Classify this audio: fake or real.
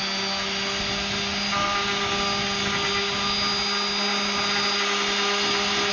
real